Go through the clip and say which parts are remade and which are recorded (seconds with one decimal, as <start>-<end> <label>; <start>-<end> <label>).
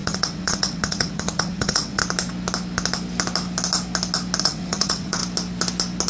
0.0-2.0 remade; 2.0-4.4 recorded; 4.4-5.2 remade; 5.2-6.1 recorded